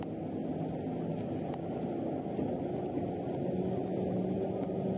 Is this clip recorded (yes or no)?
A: yes